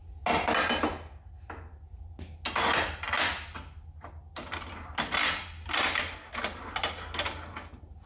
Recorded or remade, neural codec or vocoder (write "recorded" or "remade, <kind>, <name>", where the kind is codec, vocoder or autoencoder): recorded